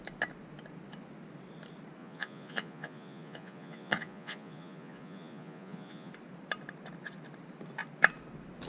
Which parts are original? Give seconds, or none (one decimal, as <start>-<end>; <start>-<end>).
0.0-2.0; 6.1-8.7